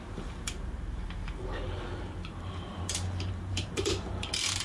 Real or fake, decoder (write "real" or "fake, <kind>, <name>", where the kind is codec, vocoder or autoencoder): fake, vocoder, BigVGAN v2